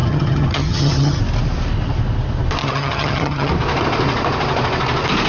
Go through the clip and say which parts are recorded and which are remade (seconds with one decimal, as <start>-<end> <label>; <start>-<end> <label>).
0.0-1.2 remade; 1.2-2.6 recorded; 2.6-3.5 remade; 3.5-5.3 recorded